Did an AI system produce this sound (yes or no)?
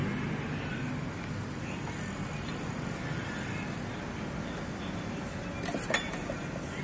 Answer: no